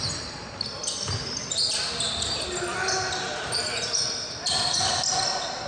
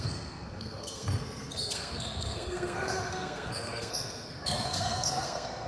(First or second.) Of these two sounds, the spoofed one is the second